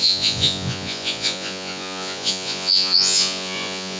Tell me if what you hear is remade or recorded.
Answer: remade